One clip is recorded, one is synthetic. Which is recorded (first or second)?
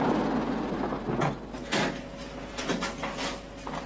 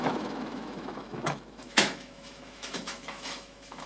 first